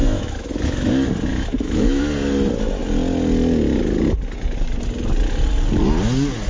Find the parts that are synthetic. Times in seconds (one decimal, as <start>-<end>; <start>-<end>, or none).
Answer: 0.0-0.9; 1.3-2.0